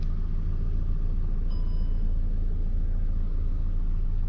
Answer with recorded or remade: recorded